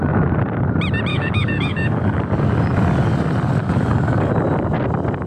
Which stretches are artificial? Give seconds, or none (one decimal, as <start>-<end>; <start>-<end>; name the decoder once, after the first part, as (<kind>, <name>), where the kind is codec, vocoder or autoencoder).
1.1-2.2 (codec, DAC); 3.6-4.3